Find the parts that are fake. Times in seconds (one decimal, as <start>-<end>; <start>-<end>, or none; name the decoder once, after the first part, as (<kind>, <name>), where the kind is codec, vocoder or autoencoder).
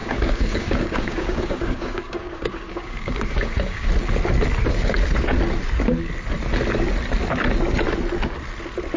0.0-3.9 (codec, DAC)